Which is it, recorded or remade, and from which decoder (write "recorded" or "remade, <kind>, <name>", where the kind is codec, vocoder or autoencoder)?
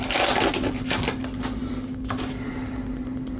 recorded